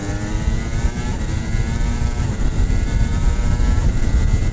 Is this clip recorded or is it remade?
recorded